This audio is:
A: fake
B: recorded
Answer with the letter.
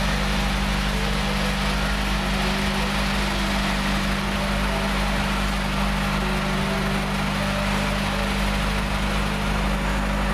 B